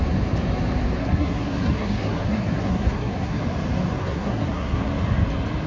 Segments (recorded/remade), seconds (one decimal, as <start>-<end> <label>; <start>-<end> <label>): 0.0-1.0 recorded; 1.0-3.4 remade; 3.4-4.0 recorded; 4.0-4.9 remade; 4.9-5.7 recorded